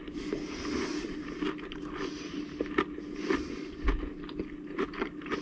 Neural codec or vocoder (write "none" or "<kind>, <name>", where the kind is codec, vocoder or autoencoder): none